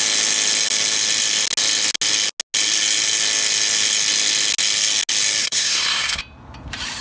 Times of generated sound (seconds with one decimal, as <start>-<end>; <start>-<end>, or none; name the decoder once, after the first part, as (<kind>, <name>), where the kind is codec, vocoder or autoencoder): 5.4-6.2 (codec, SNAC)